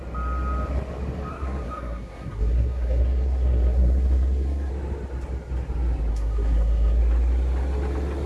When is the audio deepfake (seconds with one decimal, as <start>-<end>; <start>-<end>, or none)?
1.3-4.7; 6.1-7.0